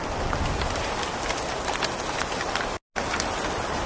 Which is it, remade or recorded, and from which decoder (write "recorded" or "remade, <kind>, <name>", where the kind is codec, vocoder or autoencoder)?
recorded